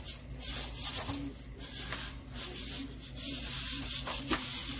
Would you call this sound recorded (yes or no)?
yes